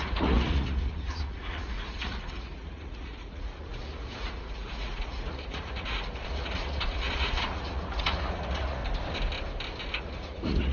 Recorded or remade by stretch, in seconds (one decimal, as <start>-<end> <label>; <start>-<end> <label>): 0.0-8.8 remade; 8.8-10.0 recorded; 10.0-10.7 remade